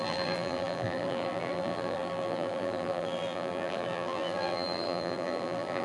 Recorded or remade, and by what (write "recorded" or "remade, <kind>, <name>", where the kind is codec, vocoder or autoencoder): remade, vocoder, BigVGAN v2